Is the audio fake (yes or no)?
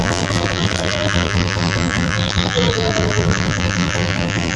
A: yes